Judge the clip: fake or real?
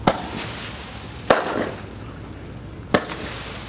real